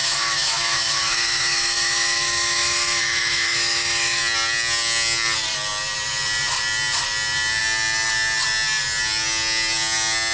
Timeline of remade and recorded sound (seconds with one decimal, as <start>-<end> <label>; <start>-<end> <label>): 0.0-4.2 remade; 4.2-10.3 recorded